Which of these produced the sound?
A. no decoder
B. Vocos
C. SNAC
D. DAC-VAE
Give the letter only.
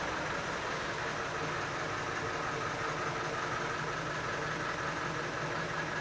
A